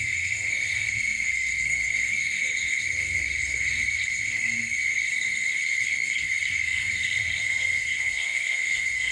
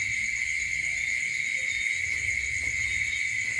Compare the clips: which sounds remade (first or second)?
first